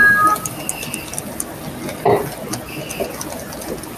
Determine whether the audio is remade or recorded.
recorded